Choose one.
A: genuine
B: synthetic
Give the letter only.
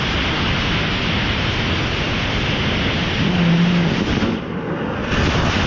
A